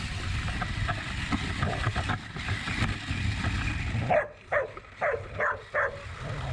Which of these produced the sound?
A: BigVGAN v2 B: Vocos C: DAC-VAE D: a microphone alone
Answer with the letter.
D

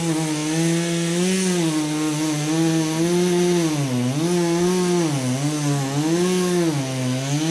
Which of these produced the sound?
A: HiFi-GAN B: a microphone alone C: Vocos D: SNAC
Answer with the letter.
B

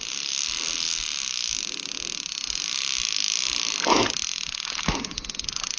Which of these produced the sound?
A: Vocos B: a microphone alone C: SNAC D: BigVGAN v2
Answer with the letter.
B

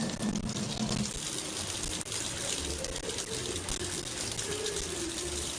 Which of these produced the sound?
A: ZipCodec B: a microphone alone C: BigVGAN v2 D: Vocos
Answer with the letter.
B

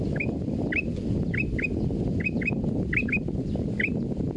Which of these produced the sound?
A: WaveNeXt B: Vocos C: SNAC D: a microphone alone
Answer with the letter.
D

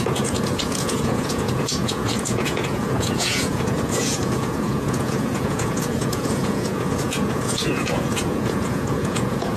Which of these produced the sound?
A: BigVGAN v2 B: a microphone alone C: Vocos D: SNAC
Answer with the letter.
C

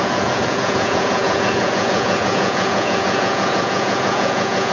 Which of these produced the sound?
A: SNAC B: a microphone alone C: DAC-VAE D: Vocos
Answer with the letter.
D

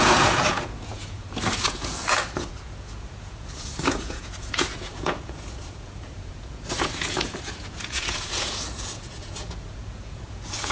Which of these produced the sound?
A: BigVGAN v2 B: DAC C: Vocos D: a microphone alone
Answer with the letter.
C